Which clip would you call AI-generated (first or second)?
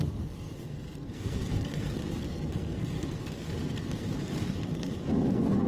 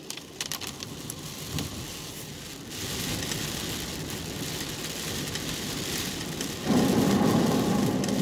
first